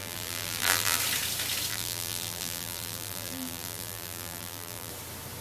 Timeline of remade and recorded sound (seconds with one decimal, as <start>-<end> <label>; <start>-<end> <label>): 0.0-1.0 remade; 1.0-1.7 recorded; 1.7-4.9 remade; 4.9-5.4 recorded

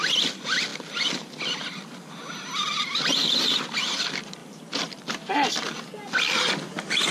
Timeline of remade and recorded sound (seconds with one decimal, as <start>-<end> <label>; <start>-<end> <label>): 0.0-4.4 recorded; 4.4-4.9 remade; 4.9-7.1 recorded